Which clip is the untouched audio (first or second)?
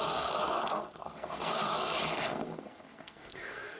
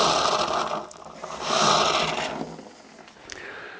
second